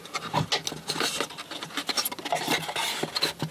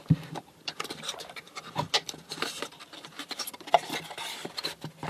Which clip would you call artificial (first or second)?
second